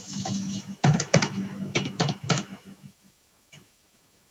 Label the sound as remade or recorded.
remade